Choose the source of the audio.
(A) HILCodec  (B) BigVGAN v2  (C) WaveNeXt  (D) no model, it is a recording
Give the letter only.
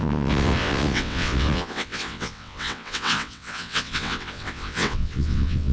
C